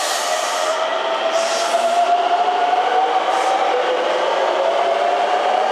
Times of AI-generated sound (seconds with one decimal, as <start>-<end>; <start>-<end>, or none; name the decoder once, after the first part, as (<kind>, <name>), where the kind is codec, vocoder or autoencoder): 0.0-5.7 (vocoder, BigVGAN v2)